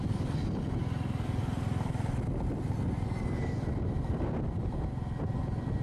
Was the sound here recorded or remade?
recorded